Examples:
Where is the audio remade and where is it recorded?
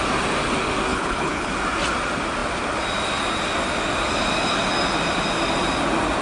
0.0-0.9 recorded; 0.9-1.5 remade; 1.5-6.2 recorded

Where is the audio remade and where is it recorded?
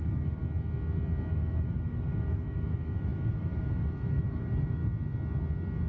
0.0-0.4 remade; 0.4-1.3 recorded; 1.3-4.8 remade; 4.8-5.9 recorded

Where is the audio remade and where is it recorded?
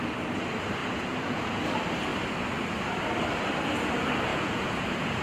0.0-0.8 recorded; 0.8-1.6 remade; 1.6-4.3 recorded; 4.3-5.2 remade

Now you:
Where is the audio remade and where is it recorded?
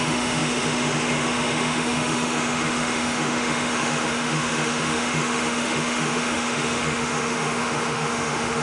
0.0-8.6 remade